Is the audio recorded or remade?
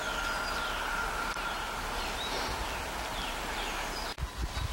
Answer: recorded